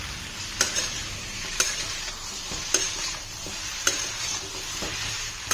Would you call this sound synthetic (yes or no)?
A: yes